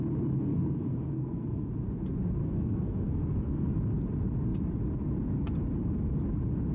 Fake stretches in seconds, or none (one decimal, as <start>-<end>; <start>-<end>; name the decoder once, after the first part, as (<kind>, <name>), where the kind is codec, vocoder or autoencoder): 0.5-1.7 (codec, SNAC); 2.4-3.7